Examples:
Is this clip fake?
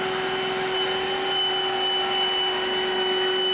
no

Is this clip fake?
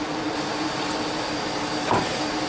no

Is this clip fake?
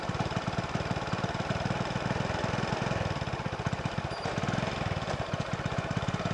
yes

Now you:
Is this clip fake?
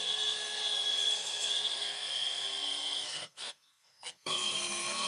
yes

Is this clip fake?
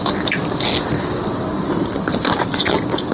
no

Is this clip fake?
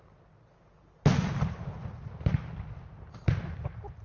no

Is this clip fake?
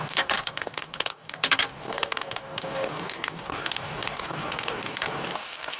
yes